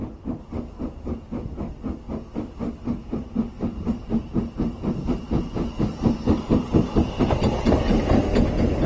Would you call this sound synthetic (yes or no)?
no